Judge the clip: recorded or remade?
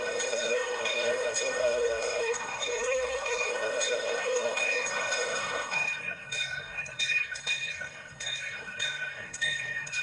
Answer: remade